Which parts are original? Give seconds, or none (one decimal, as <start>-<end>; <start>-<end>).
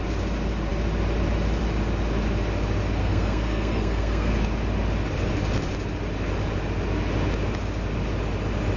0.0-3.0; 4.3-8.8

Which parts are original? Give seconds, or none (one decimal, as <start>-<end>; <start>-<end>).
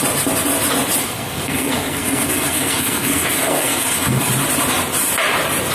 0.0-1.0; 4.3-5.7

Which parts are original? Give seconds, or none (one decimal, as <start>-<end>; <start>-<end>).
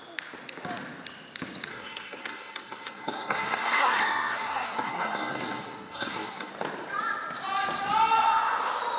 0.0-1.7; 6.5-9.0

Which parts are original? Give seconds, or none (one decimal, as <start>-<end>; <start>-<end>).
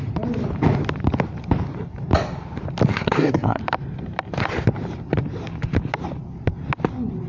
0.0-2.9; 3.6-7.3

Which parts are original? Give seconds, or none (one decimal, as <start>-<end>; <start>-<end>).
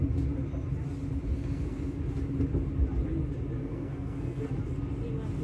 0.0-1.3; 2.0-3.6; 4.5-5.4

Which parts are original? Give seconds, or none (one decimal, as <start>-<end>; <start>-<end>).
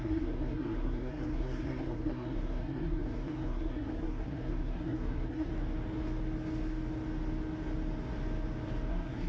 5.5-8.9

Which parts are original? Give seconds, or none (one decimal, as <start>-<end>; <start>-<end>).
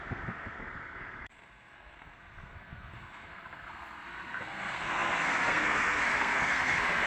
none